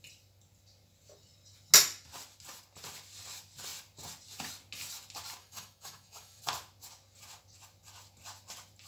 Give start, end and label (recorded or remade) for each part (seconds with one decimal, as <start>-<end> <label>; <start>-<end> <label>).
0.0-5.4 recorded; 5.4-6.4 remade; 6.4-8.9 recorded